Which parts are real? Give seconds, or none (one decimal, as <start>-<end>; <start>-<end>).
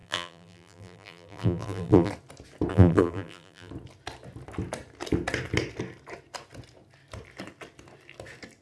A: 2.1-2.7; 3.7-8.6